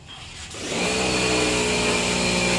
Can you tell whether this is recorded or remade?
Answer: recorded